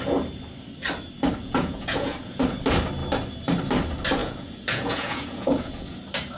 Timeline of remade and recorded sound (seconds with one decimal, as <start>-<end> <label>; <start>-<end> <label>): 0.0-1.4 recorded; 1.4-2.4 remade; 2.4-4.2 recorded; 4.2-6.0 remade; 6.0-6.4 recorded

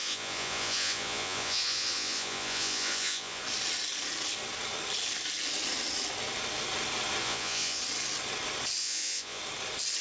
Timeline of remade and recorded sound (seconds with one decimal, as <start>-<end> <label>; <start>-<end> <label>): 0.0-3.4 remade; 3.4-7.2 recorded; 7.2-7.8 remade; 7.8-8.8 recorded; 8.8-9.4 remade; 9.4-10.0 recorded

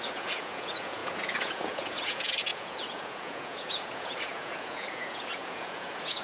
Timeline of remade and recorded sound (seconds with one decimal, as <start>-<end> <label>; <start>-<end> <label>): 0.0-6.2 remade

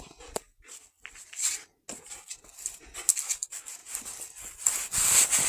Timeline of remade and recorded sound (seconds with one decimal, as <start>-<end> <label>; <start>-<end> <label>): 0.0-5.5 recorded

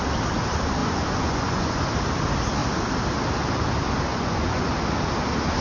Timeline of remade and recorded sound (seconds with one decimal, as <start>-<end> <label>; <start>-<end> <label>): 0.0-0.8 recorded; 0.8-1.8 remade; 1.8-4.1 recorded; 4.1-4.7 remade; 4.7-5.6 recorded

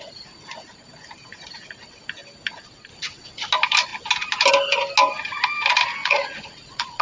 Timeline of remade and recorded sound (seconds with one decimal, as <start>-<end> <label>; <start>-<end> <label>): 0.0-6.0 recorded; 6.0-7.0 remade

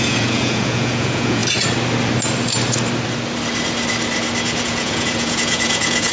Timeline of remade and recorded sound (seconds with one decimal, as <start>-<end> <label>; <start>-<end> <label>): 0.0-1.4 remade; 1.4-4.6 recorded; 4.6-6.1 remade